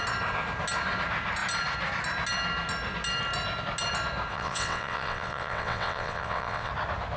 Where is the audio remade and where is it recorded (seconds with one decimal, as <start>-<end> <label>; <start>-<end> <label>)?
0.0-4.3 recorded; 4.3-6.7 remade; 6.7-7.2 recorded